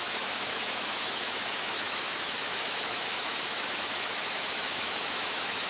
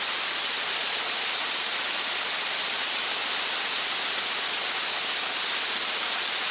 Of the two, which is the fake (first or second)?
first